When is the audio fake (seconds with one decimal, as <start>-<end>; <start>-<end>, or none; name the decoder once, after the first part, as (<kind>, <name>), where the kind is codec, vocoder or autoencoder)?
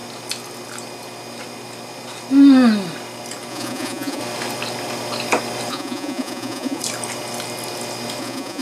3.5-4.2 (vocoder, Vocos); 5.7-6.8; 8.2-8.6